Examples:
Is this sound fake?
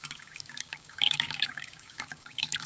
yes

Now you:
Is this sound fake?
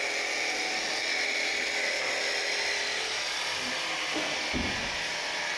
no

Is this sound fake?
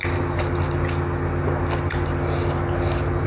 no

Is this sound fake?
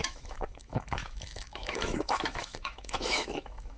yes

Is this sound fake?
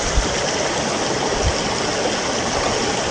no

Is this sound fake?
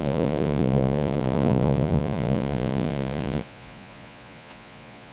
yes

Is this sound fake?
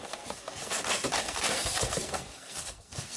yes